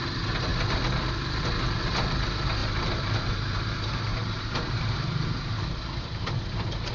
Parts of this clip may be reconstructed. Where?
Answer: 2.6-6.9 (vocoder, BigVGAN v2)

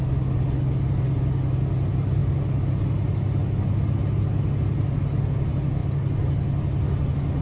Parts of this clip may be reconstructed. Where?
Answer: none

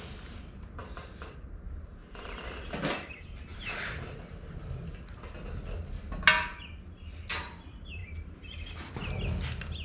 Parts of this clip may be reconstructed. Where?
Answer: 0.8-2.3 (vocoder, BigVGAN v2)

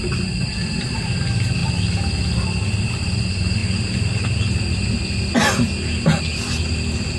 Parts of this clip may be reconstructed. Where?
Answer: 0.0-7.2 (vocoder, BigVGAN v2)

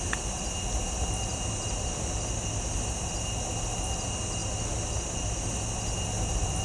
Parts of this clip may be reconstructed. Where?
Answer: none